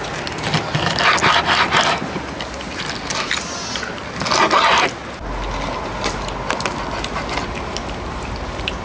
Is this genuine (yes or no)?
yes